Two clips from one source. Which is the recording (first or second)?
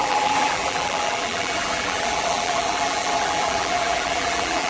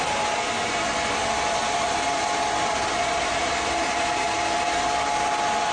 second